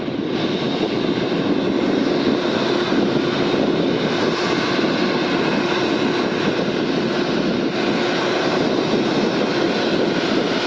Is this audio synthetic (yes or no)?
no